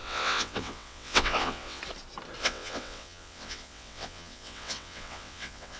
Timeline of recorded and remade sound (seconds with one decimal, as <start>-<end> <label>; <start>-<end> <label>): 0.0-1.8 remade; 1.8-2.4 recorded; 2.4-5.8 remade